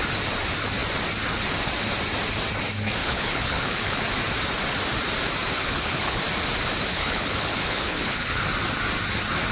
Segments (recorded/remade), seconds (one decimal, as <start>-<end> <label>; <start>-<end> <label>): 0.0-3.0 recorded; 3.0-4.0 remade; 4.0-5.6 recorded; 5.6-6.2 remade; 6.2-6.9 recorded; 6.9-8.4 remade; 8.4-9.5 recorded